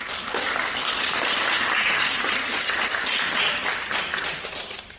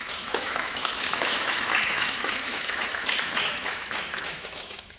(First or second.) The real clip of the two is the first